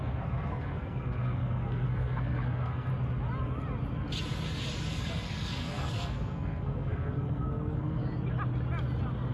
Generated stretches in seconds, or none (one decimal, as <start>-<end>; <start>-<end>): 0.0-2.9; 5.1-8.0